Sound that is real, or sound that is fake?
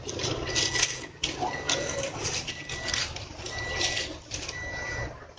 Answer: real